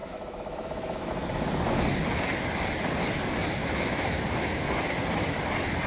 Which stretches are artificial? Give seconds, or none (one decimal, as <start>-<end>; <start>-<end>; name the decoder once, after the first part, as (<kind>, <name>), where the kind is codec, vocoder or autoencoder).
0.0-1.1 (autoencoder, DAC-VAE); 3.6-4.7